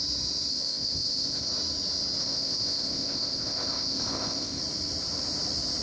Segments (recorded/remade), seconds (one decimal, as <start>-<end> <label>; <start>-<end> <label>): 0.0-0.5 recorded; 0.5-1.5 remade; 1.5-2.2 recorded; 2.2-4.6 remade; 4.6-5.8 recorded